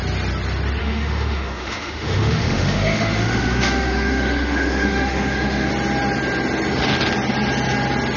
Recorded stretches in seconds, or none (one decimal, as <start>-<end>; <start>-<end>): 0.0-0.8; 5.7-8.2